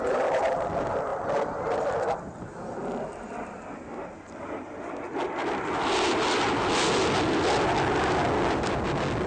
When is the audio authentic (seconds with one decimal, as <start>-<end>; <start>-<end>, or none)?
0.0-9.3